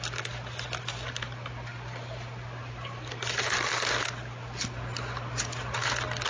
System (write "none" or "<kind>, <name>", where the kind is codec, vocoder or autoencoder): none